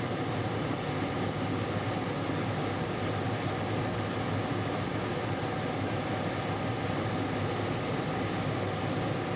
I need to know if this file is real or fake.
real